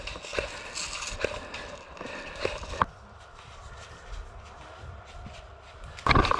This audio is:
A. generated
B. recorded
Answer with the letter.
B